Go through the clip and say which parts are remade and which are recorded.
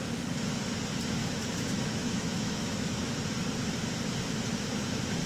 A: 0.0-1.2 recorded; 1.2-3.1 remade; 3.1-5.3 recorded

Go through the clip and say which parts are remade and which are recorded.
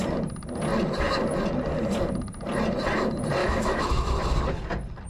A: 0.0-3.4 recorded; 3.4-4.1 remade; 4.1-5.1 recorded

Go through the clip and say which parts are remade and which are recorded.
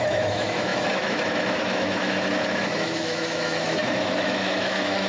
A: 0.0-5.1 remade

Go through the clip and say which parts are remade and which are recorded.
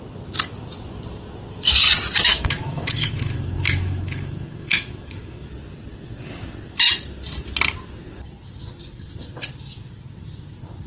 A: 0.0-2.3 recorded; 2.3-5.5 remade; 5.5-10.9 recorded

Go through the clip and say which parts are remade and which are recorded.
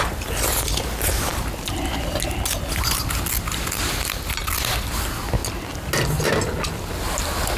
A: 0.0-7.6 recorded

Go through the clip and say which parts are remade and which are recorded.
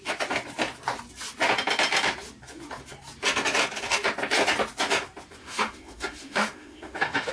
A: 0.0-5.4 recorded; 5.4-7.3 remade